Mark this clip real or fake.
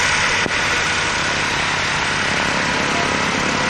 real